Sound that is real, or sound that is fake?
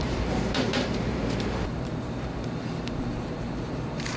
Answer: fake